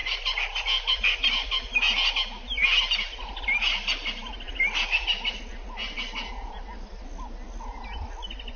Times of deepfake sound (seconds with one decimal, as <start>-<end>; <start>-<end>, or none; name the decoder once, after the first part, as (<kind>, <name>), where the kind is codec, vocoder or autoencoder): none